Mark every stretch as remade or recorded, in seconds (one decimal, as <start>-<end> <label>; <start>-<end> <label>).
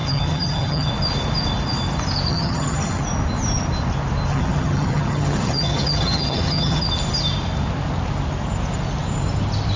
0.0-0.9 remade; 0.9-2.3 recorded; 2.3-3.0 remade; 3.0-4.3 recorded; 4.3-6.8 remade; 6.8-9.8 recorded